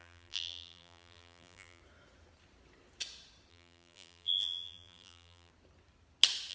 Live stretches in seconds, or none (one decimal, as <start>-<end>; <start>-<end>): 1.8-3.5; 5.5-6.5

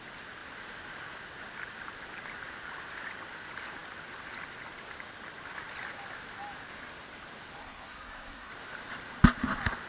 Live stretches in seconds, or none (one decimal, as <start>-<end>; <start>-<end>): 0.0-7.6; 8.5-9.9

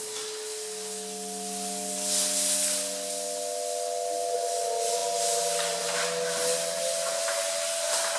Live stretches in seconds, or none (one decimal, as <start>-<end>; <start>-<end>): 0.0-8.2

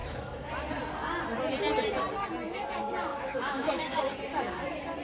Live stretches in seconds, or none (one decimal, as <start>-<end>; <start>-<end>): 0.5-3.1; 4.0-5.0

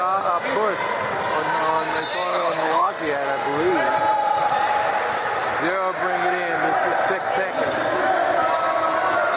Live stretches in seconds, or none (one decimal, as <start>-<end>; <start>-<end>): 0.0-2.3; 2.9-9.4

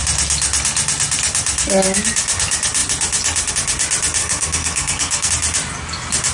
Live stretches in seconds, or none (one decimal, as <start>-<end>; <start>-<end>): 0.0-4.2; 5.3-6.3

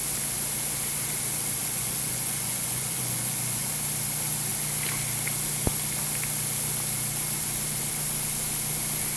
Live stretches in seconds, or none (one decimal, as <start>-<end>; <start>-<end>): 0.0-1.6; 3.7-9.2